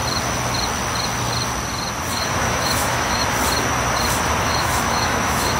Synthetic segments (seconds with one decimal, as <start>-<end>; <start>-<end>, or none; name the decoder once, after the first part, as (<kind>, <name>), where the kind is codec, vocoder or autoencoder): 2.1-3.2 (autoencoder, DAC-VAE); 4.4-5.6